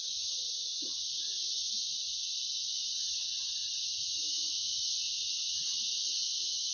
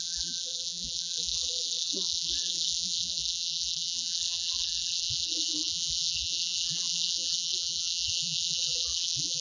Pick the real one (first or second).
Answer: first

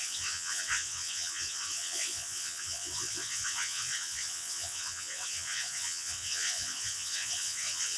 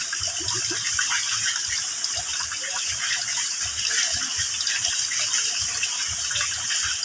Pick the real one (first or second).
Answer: second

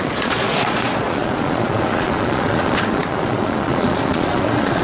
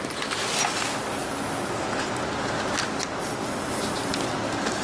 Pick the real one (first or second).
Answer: second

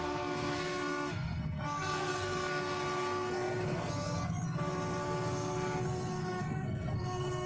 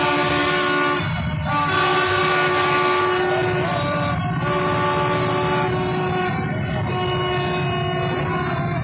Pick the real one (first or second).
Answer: second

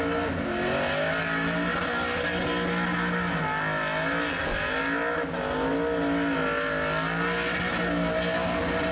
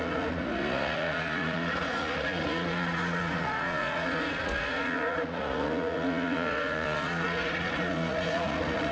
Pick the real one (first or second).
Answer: first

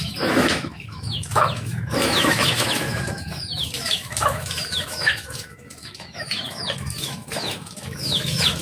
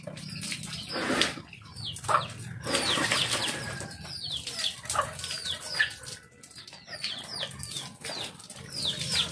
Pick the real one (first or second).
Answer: second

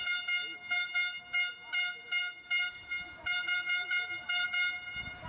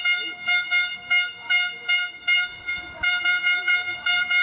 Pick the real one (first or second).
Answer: first